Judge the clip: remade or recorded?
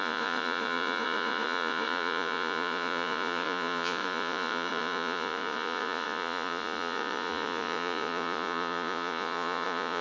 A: remade